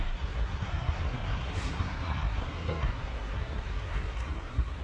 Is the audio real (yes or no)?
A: no